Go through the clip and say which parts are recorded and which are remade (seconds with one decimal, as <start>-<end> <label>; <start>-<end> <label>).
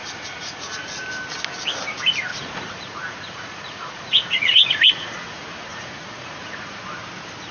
0.0-0.8 remade; 0.8-2.3 recorded; 2.3-6.8 remade; 6.8-7.5 recorded